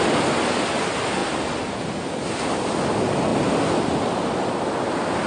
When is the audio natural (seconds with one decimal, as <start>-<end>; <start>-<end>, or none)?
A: 0.0-5.3